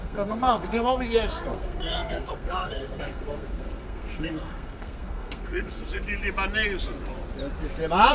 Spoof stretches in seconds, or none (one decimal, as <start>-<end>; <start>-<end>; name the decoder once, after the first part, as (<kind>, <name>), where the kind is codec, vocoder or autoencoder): 0.0-6.0 (codec, SNAC)